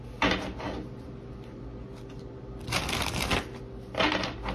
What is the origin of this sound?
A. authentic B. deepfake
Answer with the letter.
A